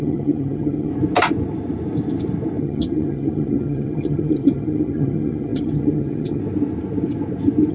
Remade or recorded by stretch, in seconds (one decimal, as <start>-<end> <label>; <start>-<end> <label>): 0.0-0.9 remade; 0.9-2.6 recorded; 2.6-6.4 remade; 6.4-7.7 recorded